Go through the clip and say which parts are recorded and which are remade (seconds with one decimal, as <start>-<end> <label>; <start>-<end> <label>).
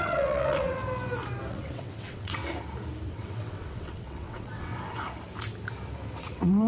0.0-0.8 remade; 0.8-1.5 recorded; 1.5-2.4 remade; 2.4-3.1 recorded; 3.1-4.7 remade; 4.7-6.2 recorded; 6.2-6.7 remade